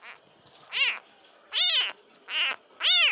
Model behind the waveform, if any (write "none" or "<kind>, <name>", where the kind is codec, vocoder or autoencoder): none